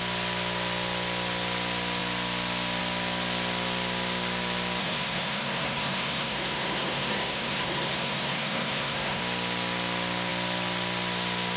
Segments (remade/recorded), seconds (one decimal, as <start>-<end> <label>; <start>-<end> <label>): 0.0-4.8 recorded; 4.8-9.2 remade; 9.2-11.6 recorded

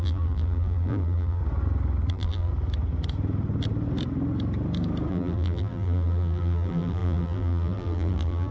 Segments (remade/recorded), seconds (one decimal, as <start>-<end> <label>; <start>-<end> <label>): 0.0-1.4 remade; 1.4-2.1 recorded; 2.1-2.5 remade; 2.5-5.1 recorded; 5.1-8.5 remade